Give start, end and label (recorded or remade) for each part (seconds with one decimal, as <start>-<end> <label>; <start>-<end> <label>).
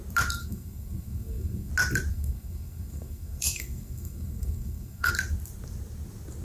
0.0-0.4 recorded; 0.4-1.7 remade; 1.7-2.1 recorded; 2.1-5.1 remade; 5.1-6.4 recorded